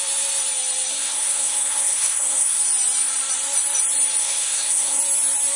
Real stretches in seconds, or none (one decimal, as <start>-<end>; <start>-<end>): 0.0-0.9; 2.6-4.2; 5.0-5.6